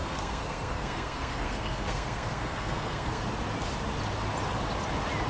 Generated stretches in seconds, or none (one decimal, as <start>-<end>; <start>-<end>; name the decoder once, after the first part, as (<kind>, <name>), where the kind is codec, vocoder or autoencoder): 0.0-3.2 (codec, SNAC)